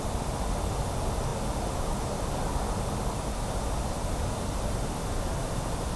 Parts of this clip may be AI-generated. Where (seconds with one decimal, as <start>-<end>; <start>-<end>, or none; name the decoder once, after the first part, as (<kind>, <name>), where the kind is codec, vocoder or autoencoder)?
none